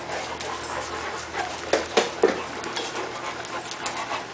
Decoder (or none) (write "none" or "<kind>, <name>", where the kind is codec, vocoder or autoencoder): none